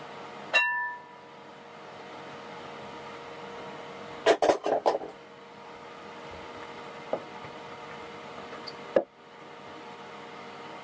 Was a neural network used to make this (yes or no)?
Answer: no